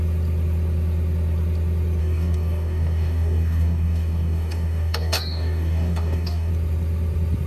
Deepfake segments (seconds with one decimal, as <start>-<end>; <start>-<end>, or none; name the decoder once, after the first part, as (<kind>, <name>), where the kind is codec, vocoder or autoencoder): 2.0-6.5 (codec, DAC)